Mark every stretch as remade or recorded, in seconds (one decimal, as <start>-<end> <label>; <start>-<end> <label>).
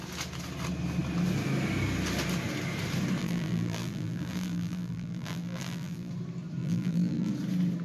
0.0-3.2 recorded; 3.2-6.1 remade; 6.1-6.6 recorded; 6.6-7.3 remade; 7.3-7.8 recorded